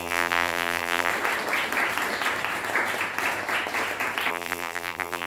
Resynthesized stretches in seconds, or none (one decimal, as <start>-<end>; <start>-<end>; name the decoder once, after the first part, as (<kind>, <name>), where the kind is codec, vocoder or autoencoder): 0.0-1.1 (vocoder, BigVGAN v2); 4.3-5.3